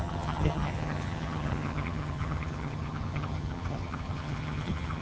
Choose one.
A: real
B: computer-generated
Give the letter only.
B